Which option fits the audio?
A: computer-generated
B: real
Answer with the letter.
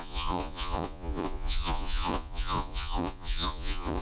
A